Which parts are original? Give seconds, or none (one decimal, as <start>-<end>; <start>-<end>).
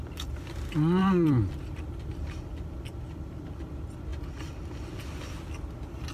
0.0-1.0; 2.0-6.1